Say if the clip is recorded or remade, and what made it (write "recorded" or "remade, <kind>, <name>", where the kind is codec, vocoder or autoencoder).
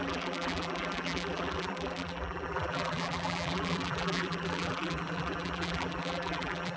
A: remade, vocoder, BigVGAN v2